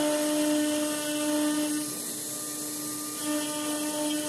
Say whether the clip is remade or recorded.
recorded